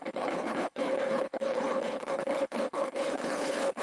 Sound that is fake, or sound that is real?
fake